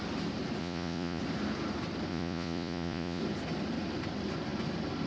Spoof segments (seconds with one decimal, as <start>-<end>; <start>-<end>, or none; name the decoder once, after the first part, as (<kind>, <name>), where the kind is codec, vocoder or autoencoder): 0.6-1.2 (vocoder, Vocos); 2.1-3.2